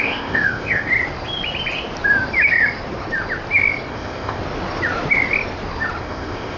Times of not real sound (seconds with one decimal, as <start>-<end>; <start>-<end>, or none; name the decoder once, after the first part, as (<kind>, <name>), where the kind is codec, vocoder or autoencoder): 0.0-0.9 (codec, ZipCodec); 3.9-4.4; 6.0-6.6